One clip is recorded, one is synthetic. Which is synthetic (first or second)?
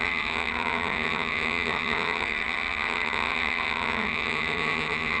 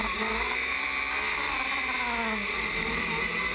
first